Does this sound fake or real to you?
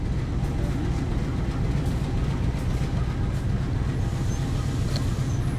real